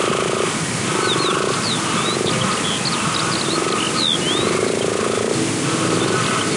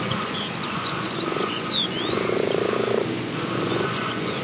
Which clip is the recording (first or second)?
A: first